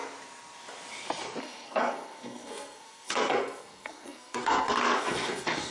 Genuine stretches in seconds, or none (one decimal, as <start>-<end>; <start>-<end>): 0.0-1.4